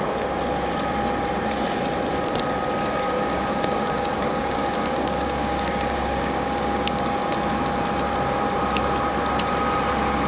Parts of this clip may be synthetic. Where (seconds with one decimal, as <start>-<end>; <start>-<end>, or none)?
2.8-7.2